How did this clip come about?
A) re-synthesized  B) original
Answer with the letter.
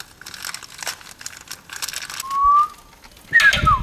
B